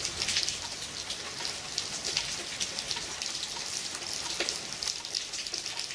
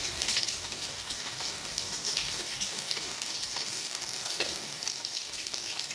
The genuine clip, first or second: first